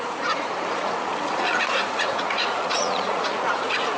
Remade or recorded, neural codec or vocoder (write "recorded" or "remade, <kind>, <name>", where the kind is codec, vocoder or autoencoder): remade, vocoder, Vocos